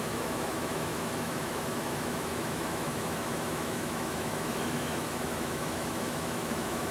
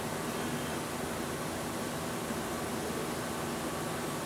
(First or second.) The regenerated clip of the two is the first